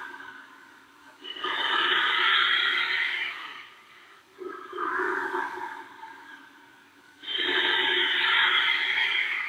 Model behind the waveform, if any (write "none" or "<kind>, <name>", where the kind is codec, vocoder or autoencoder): codec, DAC